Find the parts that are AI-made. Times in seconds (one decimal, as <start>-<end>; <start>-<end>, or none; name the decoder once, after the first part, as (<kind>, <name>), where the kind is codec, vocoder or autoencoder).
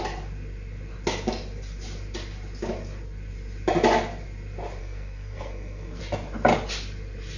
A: 4.8-6.0 (codec, SNAC)